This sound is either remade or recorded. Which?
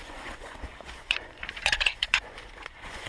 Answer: remade